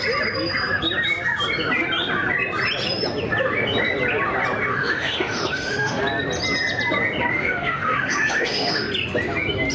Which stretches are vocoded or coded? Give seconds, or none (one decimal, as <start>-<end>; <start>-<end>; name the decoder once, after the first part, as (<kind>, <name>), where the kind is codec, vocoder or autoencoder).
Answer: 4.7-6.0 (autoencoder, DAC-VAE); 7.3-8.9